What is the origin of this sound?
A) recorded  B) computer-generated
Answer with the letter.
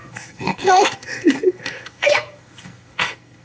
B